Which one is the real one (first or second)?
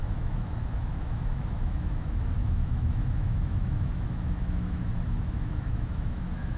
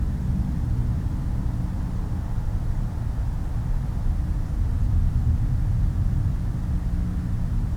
second